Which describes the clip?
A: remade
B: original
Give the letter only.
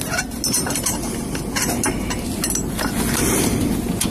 B